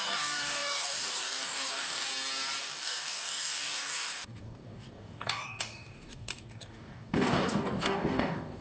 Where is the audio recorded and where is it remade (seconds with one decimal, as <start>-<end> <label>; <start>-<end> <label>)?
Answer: 0.0-2.1 remade; 2.1-2.6 recorded; 2.6-8.6 remade